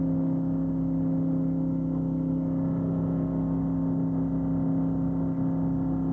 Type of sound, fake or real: real